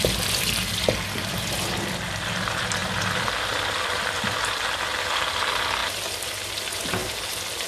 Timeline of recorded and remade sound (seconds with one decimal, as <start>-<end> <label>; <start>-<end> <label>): 0.0-7.7 recorded